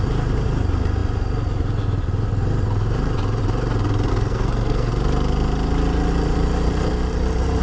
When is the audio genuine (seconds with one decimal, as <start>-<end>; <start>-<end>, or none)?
0.0-4.1; 4.9-7.6